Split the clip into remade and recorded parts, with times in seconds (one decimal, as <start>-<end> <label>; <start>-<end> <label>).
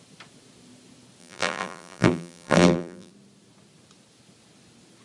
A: 0.0-1.2 recorded; 1.2-3.1 remade; 3.1-5.0 recorded